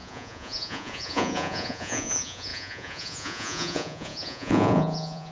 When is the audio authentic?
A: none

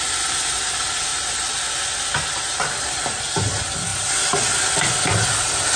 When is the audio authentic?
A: 0.0-5.8

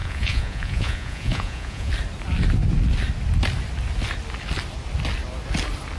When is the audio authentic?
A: 1.9-6.0

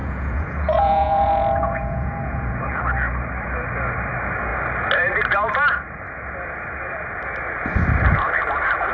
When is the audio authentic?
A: 2.7-8.9

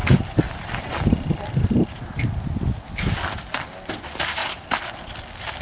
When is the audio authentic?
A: 0.0-5.6

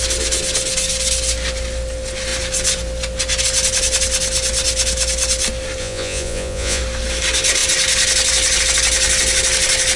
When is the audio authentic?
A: 0.0-5.8; 6.8-10.0

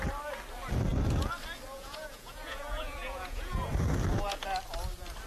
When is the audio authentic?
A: 0.0-1.7; 3.7-5.3

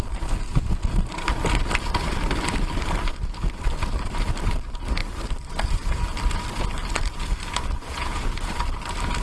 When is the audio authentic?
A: 0.0-7.9; 8.5-9.2